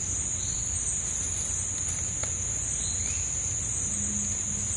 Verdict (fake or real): real